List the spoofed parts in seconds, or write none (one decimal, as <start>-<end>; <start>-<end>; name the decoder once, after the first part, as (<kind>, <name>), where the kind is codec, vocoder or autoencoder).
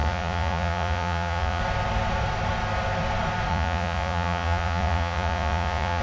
0.0-1.6 (vocoder, Vocos); 3.5-6.0